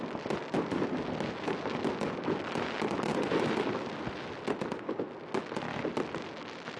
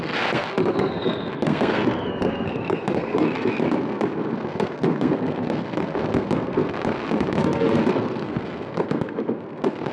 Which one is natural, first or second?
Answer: first